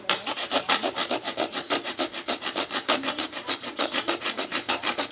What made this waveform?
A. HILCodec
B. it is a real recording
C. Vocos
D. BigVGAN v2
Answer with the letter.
D